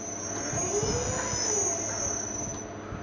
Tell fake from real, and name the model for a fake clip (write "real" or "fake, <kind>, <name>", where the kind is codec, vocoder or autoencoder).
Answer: real